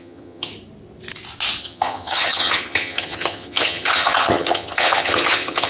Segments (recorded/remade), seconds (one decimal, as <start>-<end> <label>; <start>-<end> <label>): 0.0-0.5 remade; 0.5-1.6 recorded; 1.6-5.7 remade